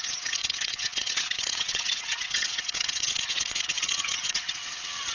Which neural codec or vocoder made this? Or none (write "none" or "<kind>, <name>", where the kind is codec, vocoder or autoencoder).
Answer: vocoder, WaveNeXt